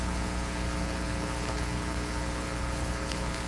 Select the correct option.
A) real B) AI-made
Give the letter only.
B